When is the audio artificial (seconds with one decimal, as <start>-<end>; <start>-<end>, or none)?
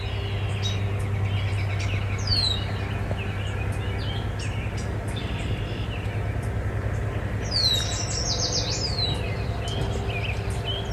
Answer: none